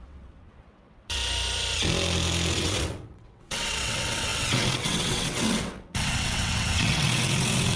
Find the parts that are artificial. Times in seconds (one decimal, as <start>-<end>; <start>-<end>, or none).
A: 0.0-1.2; 2.5-7.8